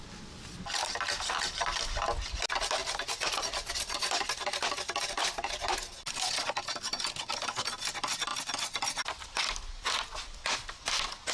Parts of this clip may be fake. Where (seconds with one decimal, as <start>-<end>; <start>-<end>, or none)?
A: none